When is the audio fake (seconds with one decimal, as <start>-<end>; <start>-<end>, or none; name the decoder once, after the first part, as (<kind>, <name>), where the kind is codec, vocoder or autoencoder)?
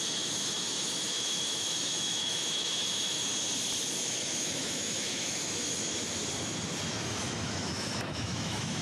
0.0-3.3 (autoencoder, DAC-VAE); 3.8-6.2; 6.9-8.8